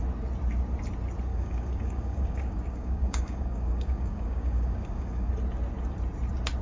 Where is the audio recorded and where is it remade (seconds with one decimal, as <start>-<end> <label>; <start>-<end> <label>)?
0.0-1.3 recorded; 1.3-5.3 remade; 5.3-6.6 recorded